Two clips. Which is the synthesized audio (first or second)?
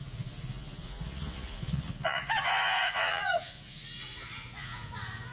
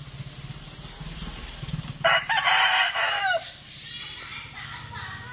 first